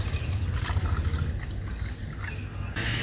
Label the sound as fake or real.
real